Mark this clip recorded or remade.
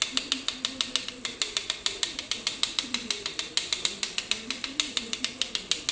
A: recorded